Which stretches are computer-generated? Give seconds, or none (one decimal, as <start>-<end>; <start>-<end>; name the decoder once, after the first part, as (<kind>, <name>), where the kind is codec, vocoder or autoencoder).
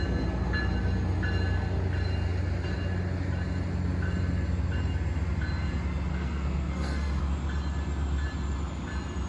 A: 6.1-7.2 (codec, SNAC)